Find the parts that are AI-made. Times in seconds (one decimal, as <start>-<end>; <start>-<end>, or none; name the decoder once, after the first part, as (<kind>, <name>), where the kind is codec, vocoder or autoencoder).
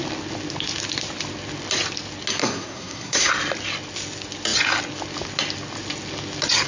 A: 2.4-3.3 (codec, SNAC)